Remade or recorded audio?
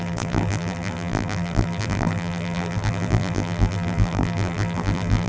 remade